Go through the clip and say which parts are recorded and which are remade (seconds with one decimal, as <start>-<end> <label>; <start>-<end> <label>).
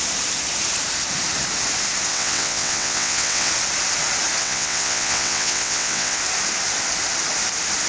0.0-2.1 recorded; 2.1-3.5 remade; 3.5-4.4 recorded; 4.4-6.2 remade; 6.2-7.9 recorded